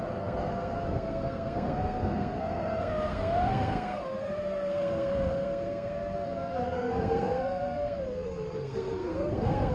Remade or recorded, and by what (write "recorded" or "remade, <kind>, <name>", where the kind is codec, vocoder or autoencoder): remade, codec, SNAC